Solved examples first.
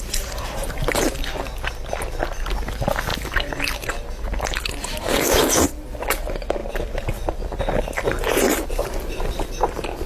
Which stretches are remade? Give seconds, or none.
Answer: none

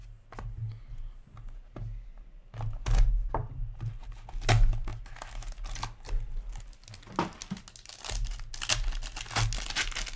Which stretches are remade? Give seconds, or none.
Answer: none

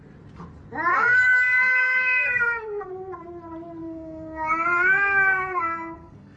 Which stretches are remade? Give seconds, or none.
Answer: 0.9-2.9 (codec, SNAC); 3.8-6.4

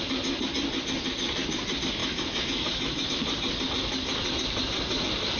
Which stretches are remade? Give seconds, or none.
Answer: 2.0-3.1 (autoencoder, DAC-VAE)

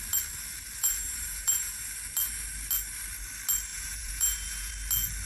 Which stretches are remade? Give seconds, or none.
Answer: 0.8-1.8 (vocoder, Vocos); 3.7-4.7

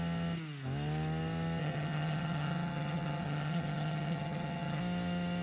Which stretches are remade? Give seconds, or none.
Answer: 1.6-4.8 (vocoder, HiFi-GAN)

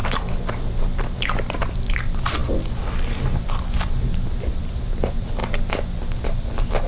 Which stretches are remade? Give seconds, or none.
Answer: none

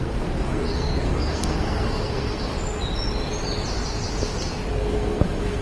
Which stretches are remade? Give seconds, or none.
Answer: 0.0-2.5 (codec, SNAC); 4.7-5.6